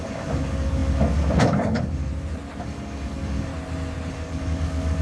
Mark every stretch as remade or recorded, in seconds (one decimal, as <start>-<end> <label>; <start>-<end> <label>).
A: 0.0-2.1 remade; 2.1-2.6 recorded; 2.6-3.5 remade; 3.5-4.1 recorded; 4.1-5.0 remade